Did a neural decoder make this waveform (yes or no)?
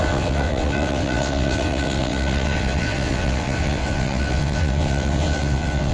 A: yes